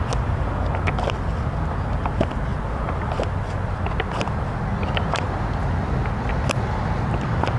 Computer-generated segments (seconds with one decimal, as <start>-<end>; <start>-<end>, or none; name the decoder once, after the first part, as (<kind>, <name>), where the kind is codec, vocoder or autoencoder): none

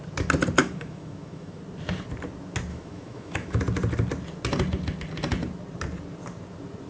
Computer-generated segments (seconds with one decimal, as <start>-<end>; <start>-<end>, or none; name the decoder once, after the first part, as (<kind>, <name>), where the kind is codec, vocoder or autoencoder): 0.6-1.6 (autoencoder, DAC-VAE); 2.7-3.6